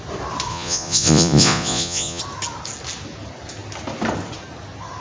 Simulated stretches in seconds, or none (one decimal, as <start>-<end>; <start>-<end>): 0.5-2.2